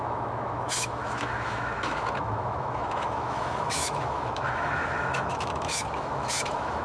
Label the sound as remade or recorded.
remade